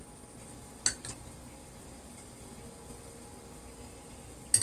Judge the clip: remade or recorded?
recorded